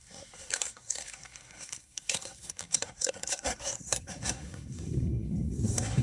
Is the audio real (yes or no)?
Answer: no